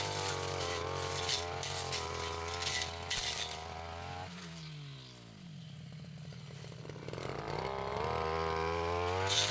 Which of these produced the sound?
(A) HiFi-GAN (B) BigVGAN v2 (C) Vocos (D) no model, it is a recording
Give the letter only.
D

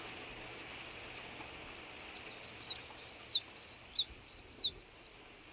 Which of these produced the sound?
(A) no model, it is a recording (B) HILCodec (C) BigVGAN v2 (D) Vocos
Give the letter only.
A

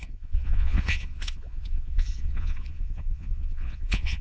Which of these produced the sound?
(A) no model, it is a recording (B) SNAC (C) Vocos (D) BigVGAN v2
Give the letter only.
C